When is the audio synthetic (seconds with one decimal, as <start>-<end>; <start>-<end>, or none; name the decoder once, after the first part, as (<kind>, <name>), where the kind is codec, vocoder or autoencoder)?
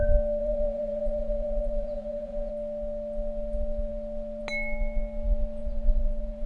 0.4-2.5 (vocoder, Vocos); 5.6-6.5